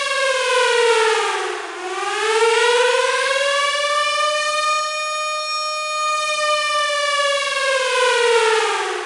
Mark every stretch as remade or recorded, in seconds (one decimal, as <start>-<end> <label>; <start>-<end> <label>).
0.0-2.4 recorded; 2.4-3.3 remade; 3.3-9.1 recorded